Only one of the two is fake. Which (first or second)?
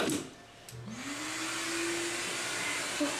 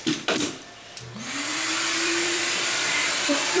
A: second